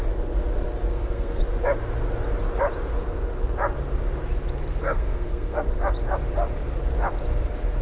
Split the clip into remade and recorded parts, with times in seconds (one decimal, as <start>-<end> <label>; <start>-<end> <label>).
0.0-0.9 recorded; 0.9-1.4 remade; 1.4-4.8 recorded; 4.8-5.7 remade; 5.7-7.8 recorded